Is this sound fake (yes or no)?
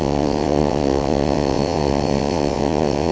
yes